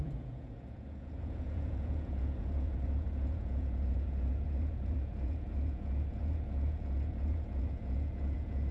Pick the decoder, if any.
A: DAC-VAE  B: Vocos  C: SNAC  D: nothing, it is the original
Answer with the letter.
B